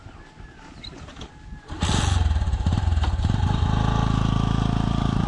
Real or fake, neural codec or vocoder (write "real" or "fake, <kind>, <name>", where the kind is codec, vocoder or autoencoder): real